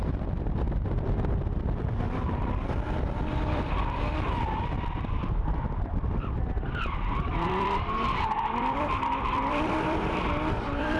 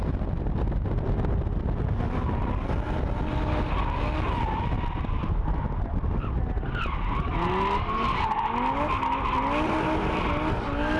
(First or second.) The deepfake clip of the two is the first